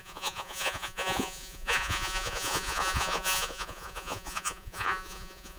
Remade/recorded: remade